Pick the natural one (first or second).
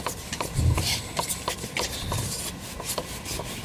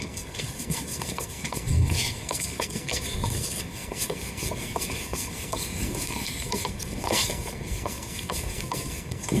first